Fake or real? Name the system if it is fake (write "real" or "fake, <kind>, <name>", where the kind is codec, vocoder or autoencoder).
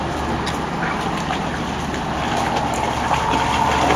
real